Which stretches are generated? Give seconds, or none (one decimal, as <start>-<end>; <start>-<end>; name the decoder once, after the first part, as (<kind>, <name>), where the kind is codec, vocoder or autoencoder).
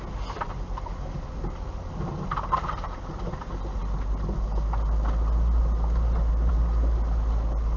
none